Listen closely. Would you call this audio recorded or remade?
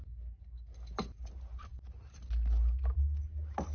recorded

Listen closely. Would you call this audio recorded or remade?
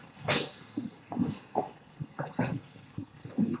remade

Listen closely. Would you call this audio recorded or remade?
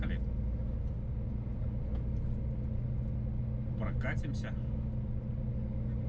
recorded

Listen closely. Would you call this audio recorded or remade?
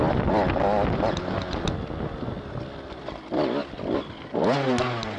recorded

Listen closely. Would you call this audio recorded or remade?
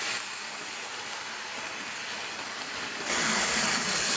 recorded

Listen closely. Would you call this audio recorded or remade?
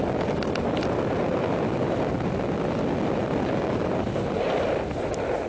recorded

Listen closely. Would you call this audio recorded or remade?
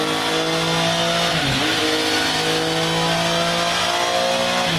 recorded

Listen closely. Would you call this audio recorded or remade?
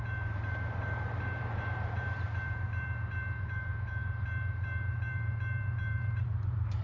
remade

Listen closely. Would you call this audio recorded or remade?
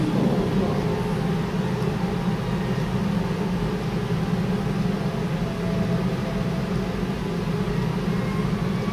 recorded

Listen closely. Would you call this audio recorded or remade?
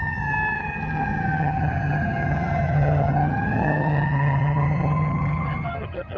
remade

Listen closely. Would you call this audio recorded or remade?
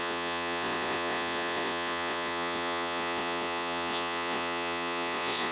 remade